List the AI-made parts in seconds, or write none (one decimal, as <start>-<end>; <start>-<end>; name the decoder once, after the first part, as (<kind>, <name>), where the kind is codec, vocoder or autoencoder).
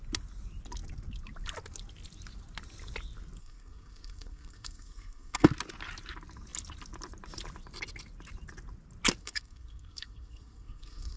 3.4-5.5 (codec, SNAC); 9.2-11.2